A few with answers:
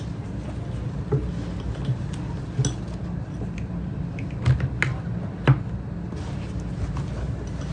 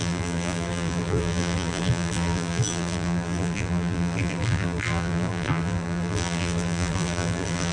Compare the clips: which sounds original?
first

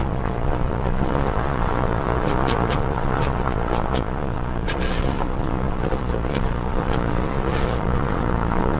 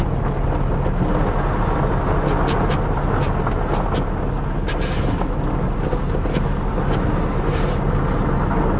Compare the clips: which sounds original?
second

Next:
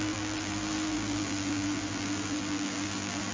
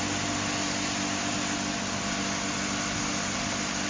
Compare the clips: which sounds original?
second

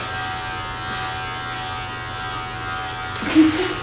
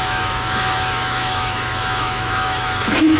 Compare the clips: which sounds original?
first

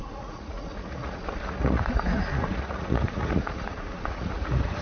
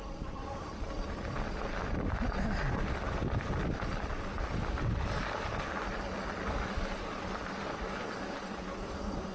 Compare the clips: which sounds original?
second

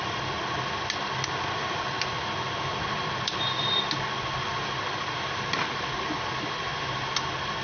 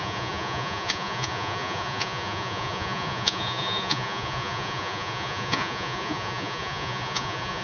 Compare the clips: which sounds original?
first